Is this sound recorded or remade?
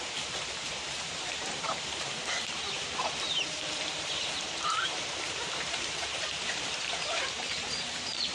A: remade